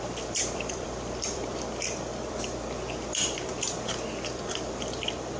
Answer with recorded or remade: remade